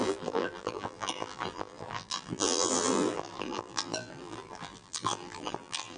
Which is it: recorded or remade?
remade